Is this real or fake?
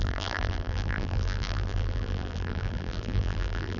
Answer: fake